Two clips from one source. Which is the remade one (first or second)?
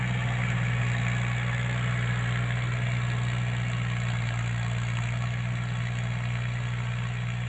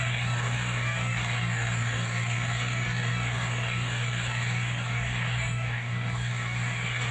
second